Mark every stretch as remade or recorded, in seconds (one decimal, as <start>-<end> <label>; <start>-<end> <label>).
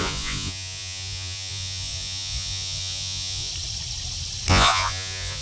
0.0-3.5 remade; 3.5-4.5 recorded; 4.5-5.4 remade